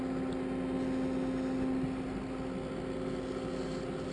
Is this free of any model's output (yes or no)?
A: yes